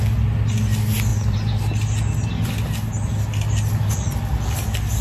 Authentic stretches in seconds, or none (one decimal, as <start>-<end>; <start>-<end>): 0.0-1.1; 1.6-5.0